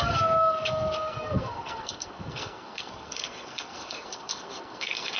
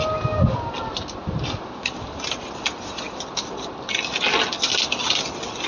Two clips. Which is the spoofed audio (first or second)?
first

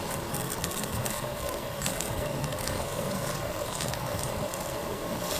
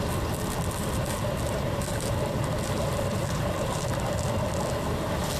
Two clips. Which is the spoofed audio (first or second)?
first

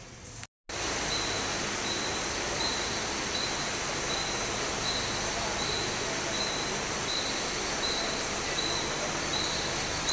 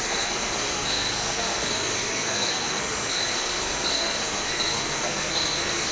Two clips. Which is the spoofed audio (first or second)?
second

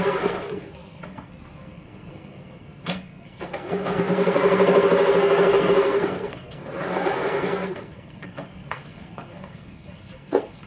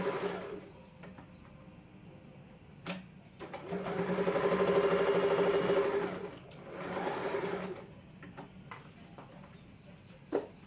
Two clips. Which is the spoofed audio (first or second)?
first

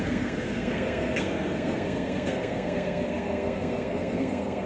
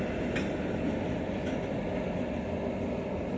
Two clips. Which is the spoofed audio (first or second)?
first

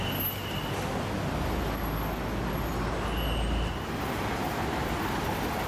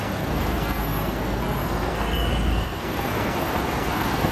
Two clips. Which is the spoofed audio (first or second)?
second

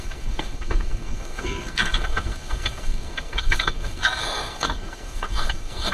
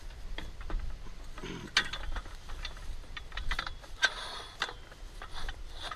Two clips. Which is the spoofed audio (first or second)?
first